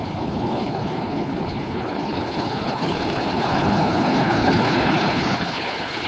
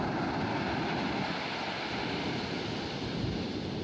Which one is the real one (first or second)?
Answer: second